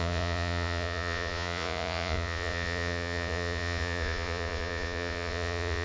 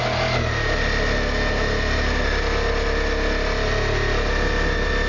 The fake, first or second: first